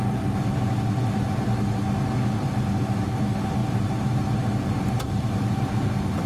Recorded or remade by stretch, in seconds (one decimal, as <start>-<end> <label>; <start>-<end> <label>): 0.0-3.6 recorded; 3.6-6.3 remade